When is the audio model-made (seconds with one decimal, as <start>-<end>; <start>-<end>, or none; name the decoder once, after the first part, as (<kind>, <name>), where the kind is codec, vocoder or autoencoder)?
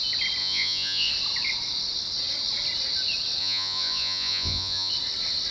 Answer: 0.4-1.1 (vocoder, Vocos); 3.4-4.9